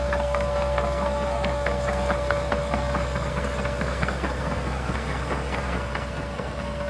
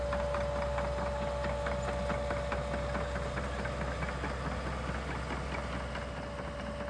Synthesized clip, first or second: first